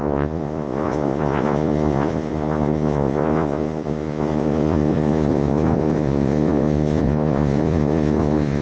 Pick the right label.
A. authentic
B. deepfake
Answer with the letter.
B